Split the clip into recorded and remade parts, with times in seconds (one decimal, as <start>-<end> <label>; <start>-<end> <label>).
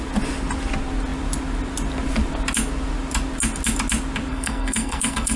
0.0-4.3 recorded; 4.3-5.4 remade